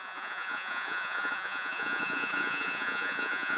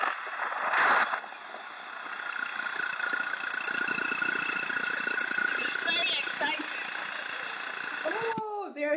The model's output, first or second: first